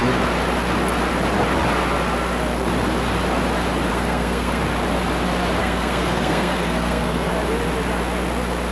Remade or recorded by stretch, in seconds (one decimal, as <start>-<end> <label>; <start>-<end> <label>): 0.0-3.9 recorded; 3.9-4.6 remade; 4.6-5.6 recorded; 5.6-7.3 remade; 7.3-8.7 recorded

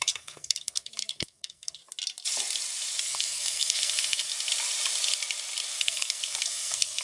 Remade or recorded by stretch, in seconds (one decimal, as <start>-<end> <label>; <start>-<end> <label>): 0.0-1.8 remade; 1.8-3.0 recorded; 3.0-4.3 remade; 4.3-5.8 recorded; 5.8-7.0 remade

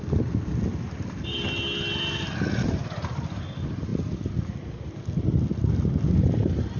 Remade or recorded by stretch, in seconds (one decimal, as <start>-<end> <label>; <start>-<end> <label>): 0.0-6.8 recorded

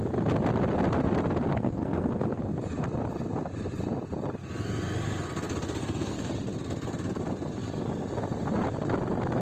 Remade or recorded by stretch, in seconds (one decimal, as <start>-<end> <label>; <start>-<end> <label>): 0.0-1.5 recorded; 1.5-2.4 remade; 2.4-5.8 recorded; 5.8-6.3 remade; 6.3-9.4 recorded